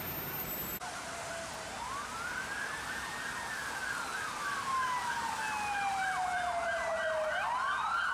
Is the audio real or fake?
real